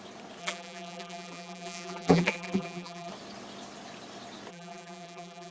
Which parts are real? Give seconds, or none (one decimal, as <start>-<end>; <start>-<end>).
0.0-0.4; 3.1-4.5